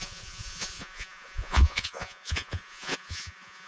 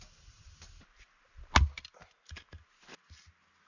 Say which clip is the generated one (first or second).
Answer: first